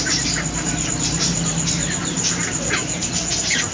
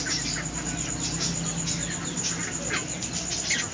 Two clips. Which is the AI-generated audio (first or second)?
first